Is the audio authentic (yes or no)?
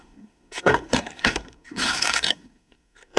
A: no